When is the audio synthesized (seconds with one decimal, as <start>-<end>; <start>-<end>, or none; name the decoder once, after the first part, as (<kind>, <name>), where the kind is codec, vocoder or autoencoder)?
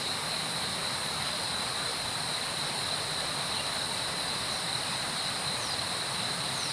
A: 0.0-1.9 (vocoder, BigVGAN v2); 5.9-6.7